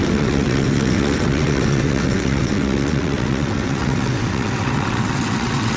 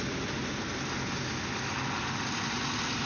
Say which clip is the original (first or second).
second